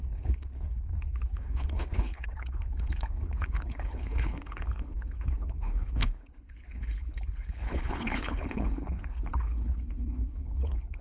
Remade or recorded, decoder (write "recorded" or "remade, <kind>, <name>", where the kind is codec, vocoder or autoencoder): remade, codec, HILCodec